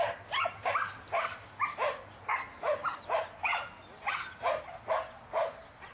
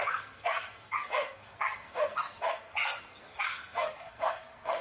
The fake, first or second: second